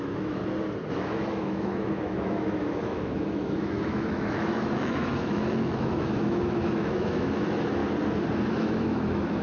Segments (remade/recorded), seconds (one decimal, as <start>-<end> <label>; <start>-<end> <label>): 0.0-0.4 remade; 0.4-0.9 recorded; 0.9-7.8 remade; 7.8-8.5 recorded; 8.5-9.4 remade